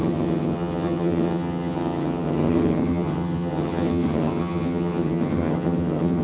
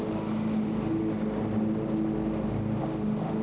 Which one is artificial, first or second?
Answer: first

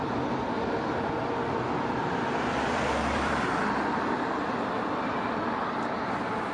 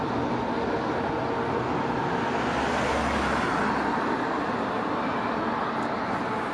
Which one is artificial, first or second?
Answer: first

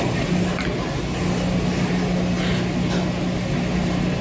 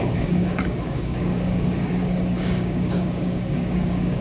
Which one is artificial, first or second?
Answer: second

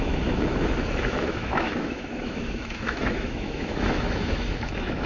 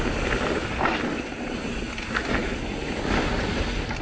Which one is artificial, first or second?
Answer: first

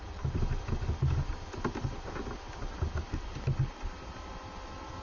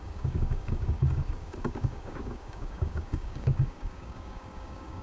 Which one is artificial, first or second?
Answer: second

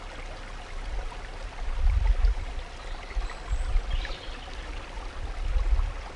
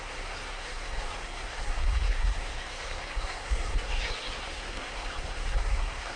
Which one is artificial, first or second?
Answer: second